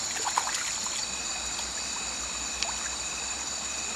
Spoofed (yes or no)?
no